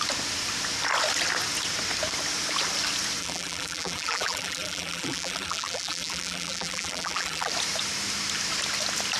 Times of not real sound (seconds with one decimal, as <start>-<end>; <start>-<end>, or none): 3.2-7.5